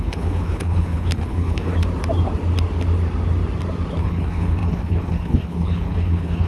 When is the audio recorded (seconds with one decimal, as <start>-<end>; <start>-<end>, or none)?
1.7-4.0